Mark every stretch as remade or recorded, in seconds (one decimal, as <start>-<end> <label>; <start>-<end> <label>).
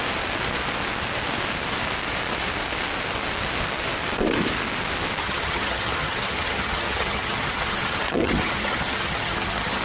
0.0-5.2 recorded; 5.2-9.8 remade